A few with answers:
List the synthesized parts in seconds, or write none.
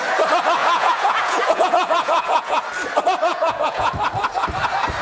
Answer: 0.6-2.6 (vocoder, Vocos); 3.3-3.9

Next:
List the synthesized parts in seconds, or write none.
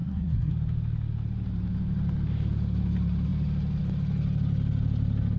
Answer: 0.0-0.5 (codec, SNAC)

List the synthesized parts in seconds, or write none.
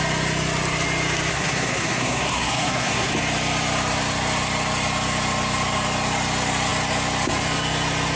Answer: 1.3-3.1 (codec, SNAC)